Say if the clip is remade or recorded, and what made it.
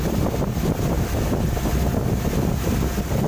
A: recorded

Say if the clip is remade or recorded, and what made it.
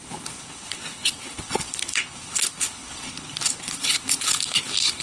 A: remade, codec, HILCodec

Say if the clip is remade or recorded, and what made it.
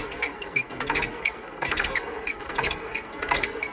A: remade, codec, SNAC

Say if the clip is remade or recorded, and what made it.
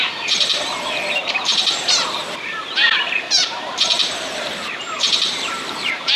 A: remade, vocoder, BigVGAN v2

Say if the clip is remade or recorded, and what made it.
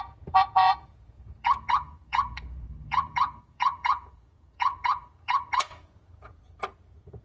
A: remade, vocoder, Vocos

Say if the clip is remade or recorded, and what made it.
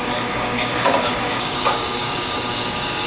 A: remade, codec, DAC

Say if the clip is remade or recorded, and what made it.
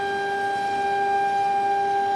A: recorded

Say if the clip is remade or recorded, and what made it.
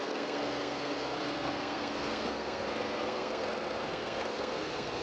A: remade, codec, SNAC